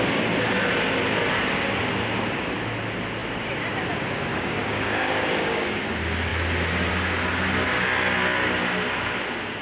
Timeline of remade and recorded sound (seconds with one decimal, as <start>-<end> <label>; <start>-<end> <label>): 0.0-4.3 recorded; 4.3-5.8 remade; 5.8-9.6 recorded